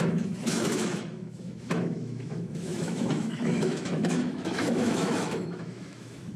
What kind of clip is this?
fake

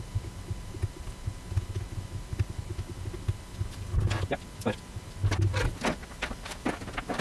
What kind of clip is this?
real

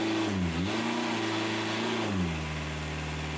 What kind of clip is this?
real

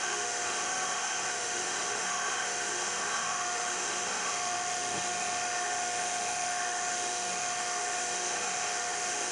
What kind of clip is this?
fake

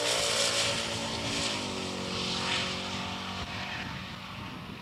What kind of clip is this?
real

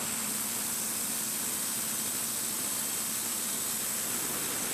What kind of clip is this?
real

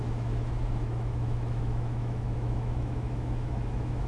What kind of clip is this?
fake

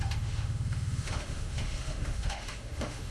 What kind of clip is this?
fake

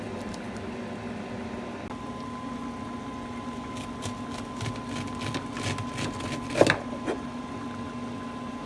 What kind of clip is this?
real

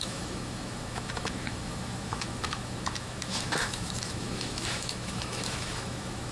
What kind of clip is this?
fake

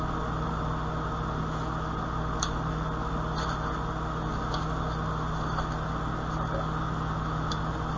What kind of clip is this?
real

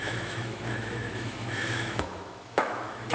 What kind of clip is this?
fake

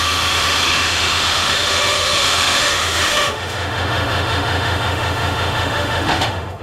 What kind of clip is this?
fake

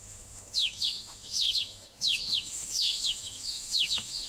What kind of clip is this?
fake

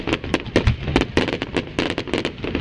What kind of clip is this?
real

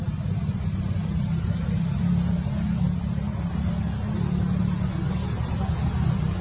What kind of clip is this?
real